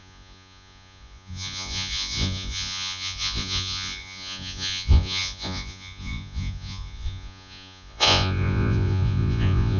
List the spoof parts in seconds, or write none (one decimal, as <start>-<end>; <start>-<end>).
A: 0.0-9.8